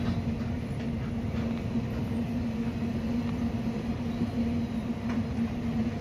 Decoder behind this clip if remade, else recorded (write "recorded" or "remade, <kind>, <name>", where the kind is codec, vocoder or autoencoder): recorded